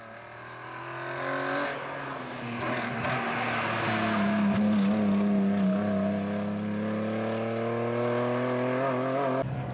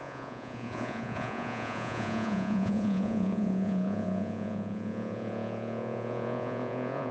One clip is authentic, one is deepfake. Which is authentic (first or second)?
first